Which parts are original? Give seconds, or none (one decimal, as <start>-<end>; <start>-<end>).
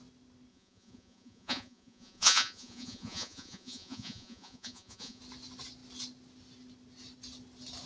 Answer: 0.0-0.5; 5.2-7.9